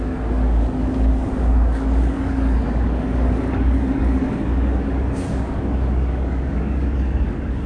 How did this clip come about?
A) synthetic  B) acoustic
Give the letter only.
A